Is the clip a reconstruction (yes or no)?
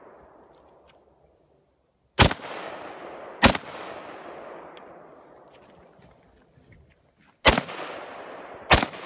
no